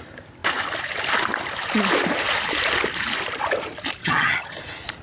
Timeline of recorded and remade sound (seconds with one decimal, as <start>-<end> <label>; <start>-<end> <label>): 0.0-4.0 recorded; 4.0-4.6 remade; 4.6-5.0 recorded